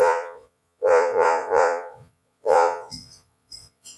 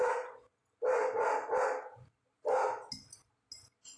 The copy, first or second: first